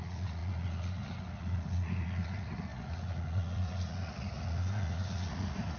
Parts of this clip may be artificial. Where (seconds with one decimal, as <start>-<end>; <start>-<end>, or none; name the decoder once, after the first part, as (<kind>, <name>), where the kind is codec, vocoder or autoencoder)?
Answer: 0.0-5.8 (vocoder, Vocos)